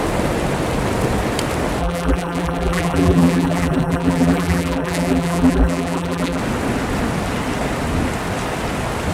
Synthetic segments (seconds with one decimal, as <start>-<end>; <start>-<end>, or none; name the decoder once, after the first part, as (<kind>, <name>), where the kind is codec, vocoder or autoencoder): 1.8-6.4 (vocoder, BigVGAN v2)